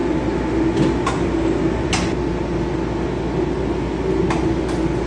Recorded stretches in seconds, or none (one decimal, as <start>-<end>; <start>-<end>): 0.0-5.1